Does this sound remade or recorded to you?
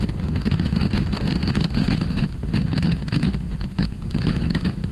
remade